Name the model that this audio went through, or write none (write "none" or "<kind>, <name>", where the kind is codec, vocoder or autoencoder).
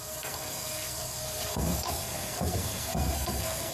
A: codec, SNAC